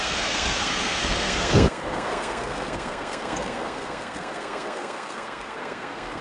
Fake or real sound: fake